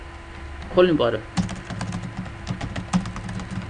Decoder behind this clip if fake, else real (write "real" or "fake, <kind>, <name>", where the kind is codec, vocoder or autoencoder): real